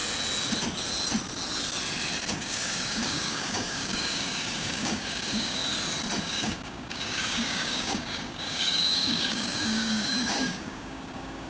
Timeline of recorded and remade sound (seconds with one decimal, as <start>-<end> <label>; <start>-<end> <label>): 0.0-2.3 recorded; 2.3-5.6 remade; 5.6-6.2 recorded; 6.2-11.5 remade